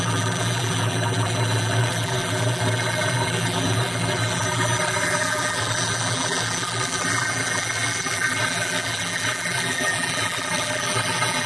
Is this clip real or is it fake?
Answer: fake